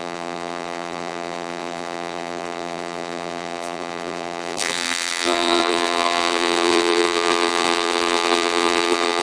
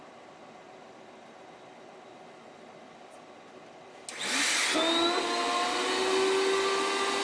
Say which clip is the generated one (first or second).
first